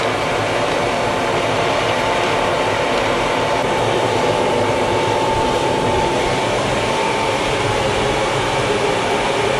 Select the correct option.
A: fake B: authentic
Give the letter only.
A